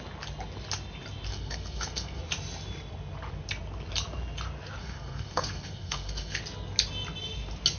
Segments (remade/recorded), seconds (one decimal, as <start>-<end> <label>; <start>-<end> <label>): 0.0-1.3 recorded; 1.3-2.2 remade; 2.2-4.8 recorded; 4.8-6.4 remade; 6.4-7.8 recorded